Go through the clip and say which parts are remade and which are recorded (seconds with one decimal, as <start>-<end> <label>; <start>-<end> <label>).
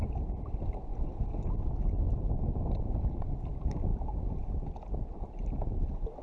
0.0-6.2 recorded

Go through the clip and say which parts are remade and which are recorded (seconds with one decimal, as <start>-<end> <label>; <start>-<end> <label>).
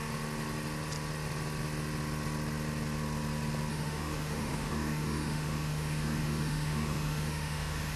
0.0-3.7 recorded; 3.7-8.0 remade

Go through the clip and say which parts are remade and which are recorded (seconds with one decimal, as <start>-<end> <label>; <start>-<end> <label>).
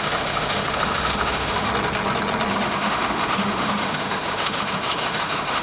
0.0-1.7 remade; 1.7-2.5 recorded; 2.5-5.6 remade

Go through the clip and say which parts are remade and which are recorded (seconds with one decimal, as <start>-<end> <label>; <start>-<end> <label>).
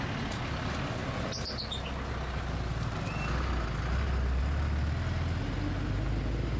0.0-6.6 recorded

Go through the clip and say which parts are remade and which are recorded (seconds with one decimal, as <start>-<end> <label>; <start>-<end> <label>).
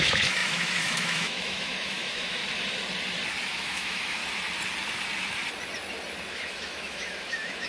0.0-2.4 remade; 2.4-3.4 recorded; 3.4-4.2 remade; 4.2-6.3 recorded; 6.3-7.7 remade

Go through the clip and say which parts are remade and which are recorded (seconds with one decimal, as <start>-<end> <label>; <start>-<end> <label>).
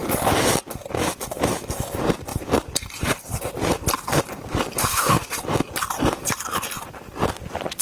0.0-4.8 recorded; 4.8-5.4 remade; 5.4-7.8 recorded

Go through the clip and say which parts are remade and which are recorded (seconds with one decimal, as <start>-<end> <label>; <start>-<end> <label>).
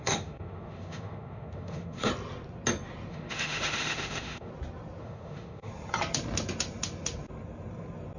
0.0-2.1 remade; 2.1-3.1 recorded; 3.1-4.5 remade; 4.5-5.0 recorded; 5.0-5.7 remade; 5.7-8.2 recorded